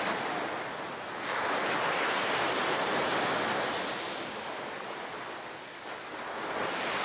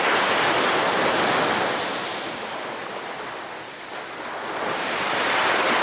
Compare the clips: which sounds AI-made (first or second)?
second